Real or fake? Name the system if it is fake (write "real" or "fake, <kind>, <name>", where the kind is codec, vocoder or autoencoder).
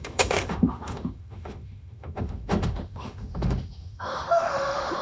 fake, autoencoder, DAC-VAE